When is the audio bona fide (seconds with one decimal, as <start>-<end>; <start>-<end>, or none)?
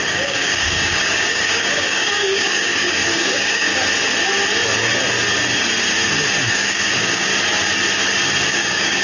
3.7-6.5; 7.3-8.5